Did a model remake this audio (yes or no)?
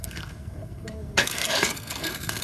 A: yes